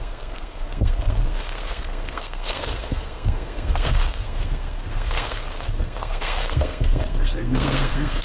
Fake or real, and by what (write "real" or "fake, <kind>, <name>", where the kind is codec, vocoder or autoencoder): fake, codec, SNAC